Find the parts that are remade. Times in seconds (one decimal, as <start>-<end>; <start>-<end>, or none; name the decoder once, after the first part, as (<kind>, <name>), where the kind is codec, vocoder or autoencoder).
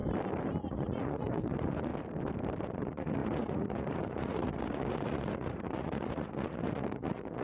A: 0.6-1.9 (vocoder, Vocos); 2.6-7.4